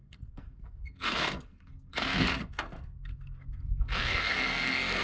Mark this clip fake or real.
fake